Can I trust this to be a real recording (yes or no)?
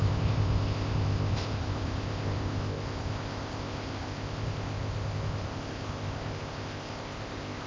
no